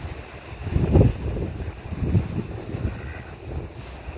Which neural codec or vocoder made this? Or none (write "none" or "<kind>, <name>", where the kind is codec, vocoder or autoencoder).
none